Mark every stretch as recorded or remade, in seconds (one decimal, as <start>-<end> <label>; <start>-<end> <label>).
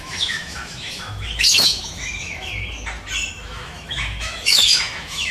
0.0-2.5 remade; 2.5-3.3 recorded; 3.3-5.3 remade